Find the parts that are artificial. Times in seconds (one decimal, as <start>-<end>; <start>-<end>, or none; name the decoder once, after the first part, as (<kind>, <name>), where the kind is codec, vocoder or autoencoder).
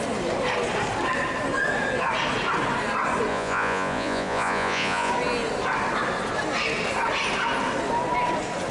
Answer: 3.3-5.1 (vocoder, Vocos)